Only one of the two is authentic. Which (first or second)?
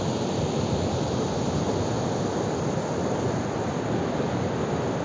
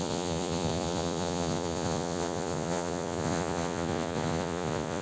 first